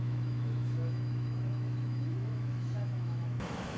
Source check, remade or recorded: remade